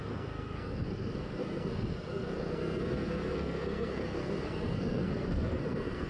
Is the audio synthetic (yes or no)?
yes